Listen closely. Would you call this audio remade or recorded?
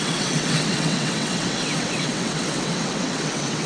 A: remade